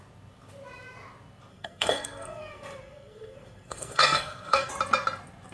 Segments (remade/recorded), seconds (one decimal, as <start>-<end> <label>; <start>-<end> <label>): 0.0-1.5 recorded; 1.5-4.7 remade; 4.7-5.5 recorded